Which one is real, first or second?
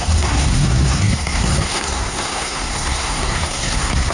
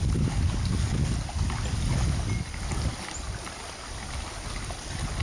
second